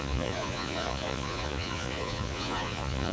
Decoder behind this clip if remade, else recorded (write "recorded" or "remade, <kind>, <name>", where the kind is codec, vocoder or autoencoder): remade, vocoder, Vocos